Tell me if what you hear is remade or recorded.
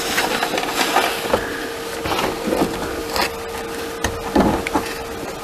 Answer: recorded